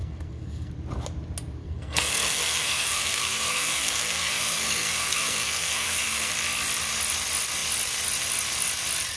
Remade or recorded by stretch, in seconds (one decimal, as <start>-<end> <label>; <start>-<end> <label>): 0.0-0.7 remade; 0.7-1.6 recorded; 1.6-6.3 remade; 6.3-9.2 recorded